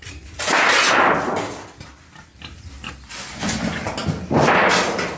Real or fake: real